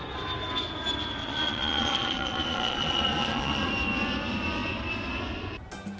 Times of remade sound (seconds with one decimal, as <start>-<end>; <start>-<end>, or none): 1.2-3.7